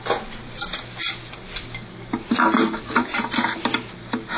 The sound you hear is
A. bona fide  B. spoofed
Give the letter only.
A